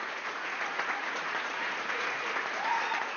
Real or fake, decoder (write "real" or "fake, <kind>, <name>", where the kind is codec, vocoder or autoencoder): fake, vocoder, Vocos